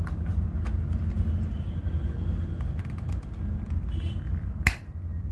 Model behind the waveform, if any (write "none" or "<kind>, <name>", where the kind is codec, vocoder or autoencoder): none